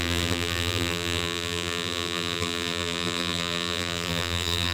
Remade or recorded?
remade